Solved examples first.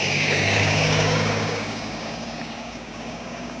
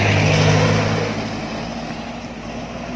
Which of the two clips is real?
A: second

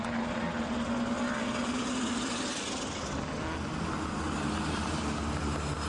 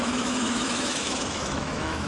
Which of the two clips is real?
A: first